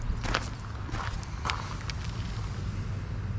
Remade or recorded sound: recorded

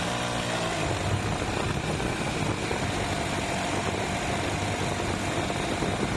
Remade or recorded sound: recorded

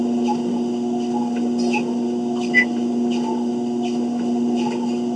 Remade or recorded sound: recorded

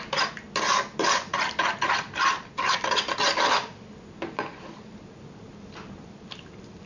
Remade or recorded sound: recorded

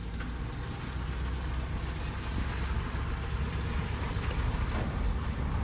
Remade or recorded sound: recorded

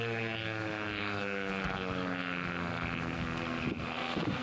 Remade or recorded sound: remade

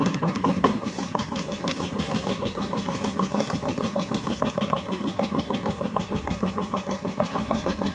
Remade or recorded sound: remade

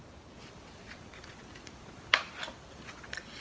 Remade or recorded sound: recorded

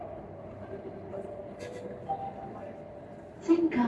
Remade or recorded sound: recorded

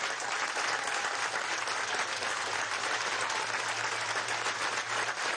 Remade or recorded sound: recorded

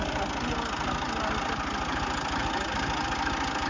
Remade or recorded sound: recorded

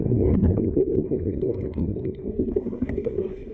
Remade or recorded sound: remade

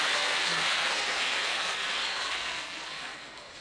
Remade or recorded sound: remade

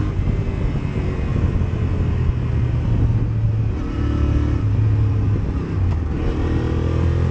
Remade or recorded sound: recorded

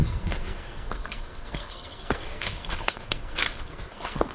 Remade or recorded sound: remade